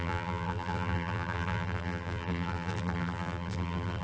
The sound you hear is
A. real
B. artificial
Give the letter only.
B